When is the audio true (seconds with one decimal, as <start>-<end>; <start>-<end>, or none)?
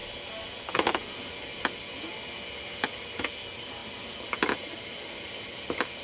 0.0-6.0